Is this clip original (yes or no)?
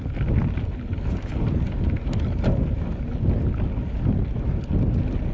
yes